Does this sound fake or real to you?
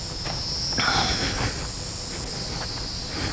real